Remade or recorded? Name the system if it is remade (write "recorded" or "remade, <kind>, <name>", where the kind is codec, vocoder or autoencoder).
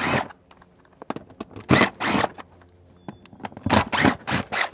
recorded